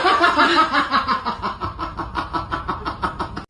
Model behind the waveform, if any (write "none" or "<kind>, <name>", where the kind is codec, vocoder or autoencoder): none